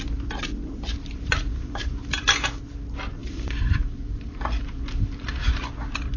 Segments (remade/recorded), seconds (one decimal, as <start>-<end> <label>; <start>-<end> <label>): 0.0-1.0 recorded; 1.0-2.6 remade; 2.6-3.2 recorded; 3.2-5.5 remade; 5.5-6.2 recorded